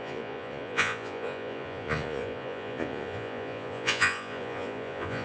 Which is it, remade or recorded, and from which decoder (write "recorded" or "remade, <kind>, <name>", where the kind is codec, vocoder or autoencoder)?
remade, vocoder, Vocos